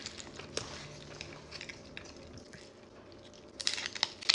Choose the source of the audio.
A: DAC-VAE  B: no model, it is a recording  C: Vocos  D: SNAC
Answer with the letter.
B